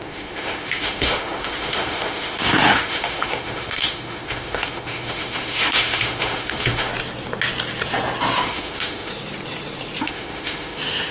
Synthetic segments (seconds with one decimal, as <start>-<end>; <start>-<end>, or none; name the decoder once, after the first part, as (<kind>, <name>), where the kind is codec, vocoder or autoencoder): 0.0-6.9 (autoencoder, DAC-VAE); 8.4-9.1; 10.0-11.1